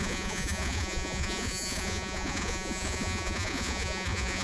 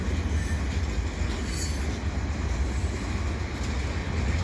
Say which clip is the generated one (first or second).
first